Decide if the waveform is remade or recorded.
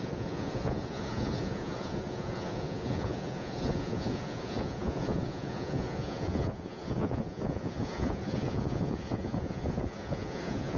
remade